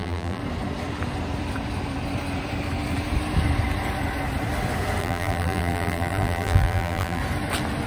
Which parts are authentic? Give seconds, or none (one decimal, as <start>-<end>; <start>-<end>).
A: 0.4-5.0; 7.2-7.9